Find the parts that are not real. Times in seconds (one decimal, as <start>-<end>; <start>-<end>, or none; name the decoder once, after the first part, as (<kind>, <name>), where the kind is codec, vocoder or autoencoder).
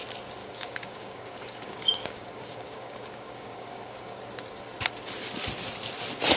0.4-4.2 (codec, DAC)